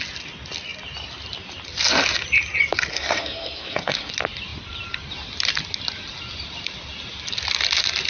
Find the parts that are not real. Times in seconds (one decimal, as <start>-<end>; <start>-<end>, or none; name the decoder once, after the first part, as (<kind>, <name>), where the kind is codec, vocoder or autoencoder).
2.9-4.1 (codec, SNAC)